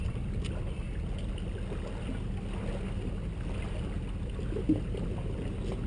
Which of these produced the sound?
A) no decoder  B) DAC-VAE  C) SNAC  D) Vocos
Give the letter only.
A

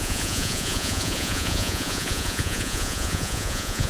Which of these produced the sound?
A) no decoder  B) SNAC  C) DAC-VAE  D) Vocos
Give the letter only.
D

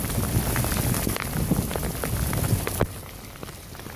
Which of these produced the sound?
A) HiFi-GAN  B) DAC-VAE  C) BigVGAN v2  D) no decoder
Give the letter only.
D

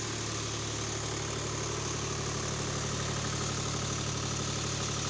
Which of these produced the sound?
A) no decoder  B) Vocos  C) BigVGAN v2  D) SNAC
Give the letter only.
A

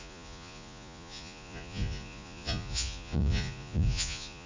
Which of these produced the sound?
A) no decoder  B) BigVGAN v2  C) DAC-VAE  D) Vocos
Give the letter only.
D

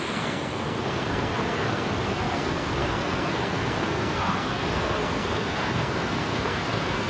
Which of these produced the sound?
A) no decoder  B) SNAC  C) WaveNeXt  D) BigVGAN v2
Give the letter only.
B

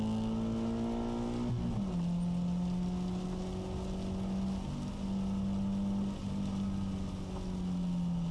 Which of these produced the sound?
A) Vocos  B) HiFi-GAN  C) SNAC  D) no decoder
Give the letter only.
D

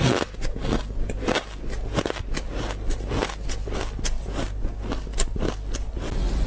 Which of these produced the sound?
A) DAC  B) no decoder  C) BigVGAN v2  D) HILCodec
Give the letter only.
B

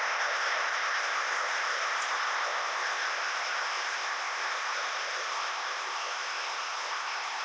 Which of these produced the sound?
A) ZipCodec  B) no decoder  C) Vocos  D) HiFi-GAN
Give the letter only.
A